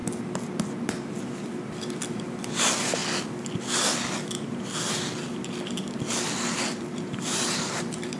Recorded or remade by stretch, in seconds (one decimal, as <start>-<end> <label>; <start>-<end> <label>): 0.0-2.5 recorded; 2.5-3.0 remade; 3.0-6.8 recorded; 6.8-8.2 remade